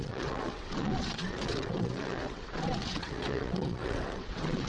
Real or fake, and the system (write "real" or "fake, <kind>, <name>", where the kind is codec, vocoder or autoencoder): fake, vocoder, WaveNeXt